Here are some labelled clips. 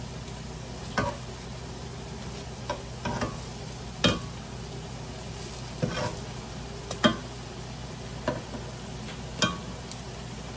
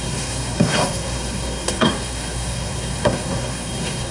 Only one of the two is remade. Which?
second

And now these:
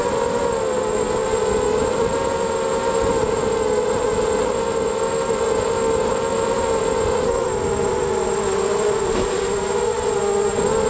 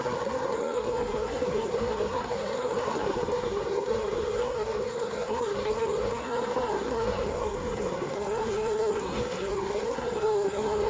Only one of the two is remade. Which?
second